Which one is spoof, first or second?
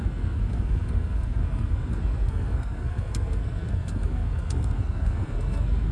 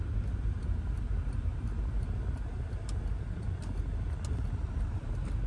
first